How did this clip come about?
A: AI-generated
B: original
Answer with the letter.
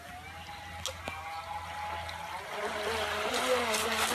B